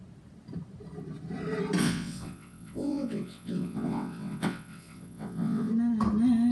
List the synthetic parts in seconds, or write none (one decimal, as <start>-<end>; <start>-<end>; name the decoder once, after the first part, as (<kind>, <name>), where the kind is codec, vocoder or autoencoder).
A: 1.8-5.7 (vocoder, WaveNeXt)